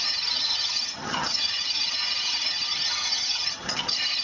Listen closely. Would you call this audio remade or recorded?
remade